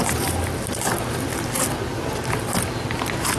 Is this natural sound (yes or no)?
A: yes